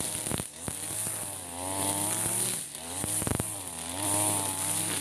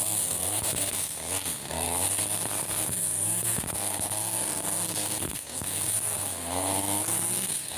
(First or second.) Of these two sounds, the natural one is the first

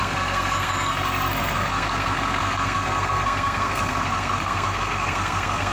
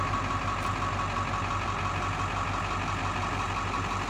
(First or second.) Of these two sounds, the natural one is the second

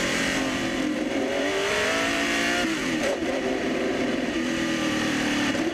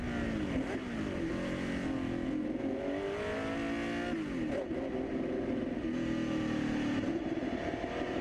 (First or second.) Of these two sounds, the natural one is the second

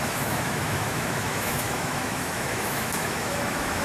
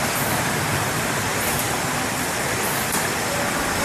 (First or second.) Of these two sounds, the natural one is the second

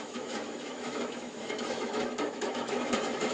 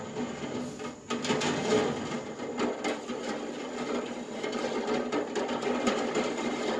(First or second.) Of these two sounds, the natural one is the second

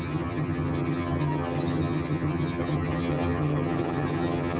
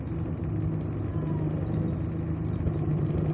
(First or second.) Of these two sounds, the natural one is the second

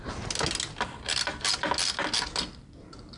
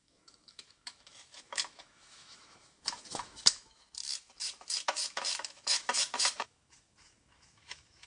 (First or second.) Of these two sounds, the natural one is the first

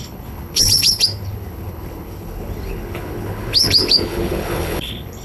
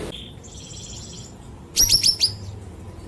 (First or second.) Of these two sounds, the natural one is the second